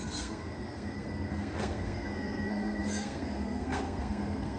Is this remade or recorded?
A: remade